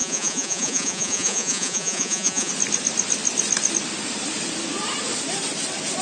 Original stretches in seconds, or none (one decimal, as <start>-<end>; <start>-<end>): 2.5-6.0